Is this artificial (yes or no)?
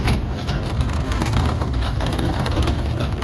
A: yes